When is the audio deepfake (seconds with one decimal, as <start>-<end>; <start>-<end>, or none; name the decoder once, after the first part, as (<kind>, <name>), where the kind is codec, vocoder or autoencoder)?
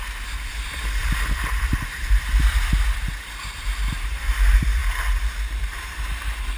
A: 0.0-4.8 (vocoder, BigVGAN v2); 5.6-6.6